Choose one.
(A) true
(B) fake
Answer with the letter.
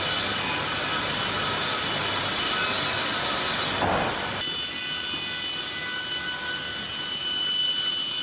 A